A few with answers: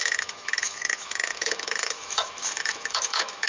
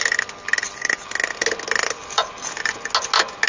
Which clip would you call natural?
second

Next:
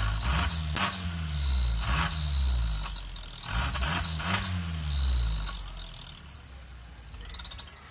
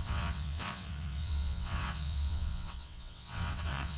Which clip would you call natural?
first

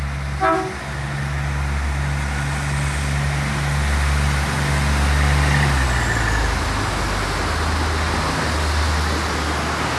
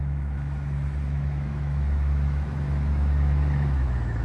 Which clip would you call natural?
first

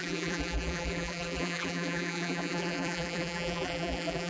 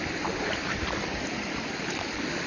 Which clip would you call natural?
second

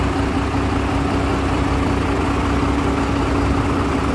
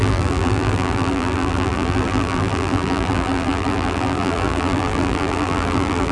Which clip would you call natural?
first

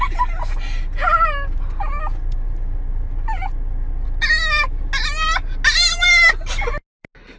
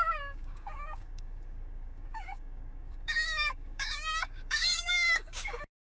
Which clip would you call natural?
first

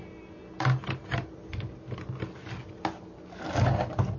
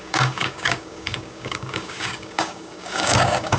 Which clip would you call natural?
first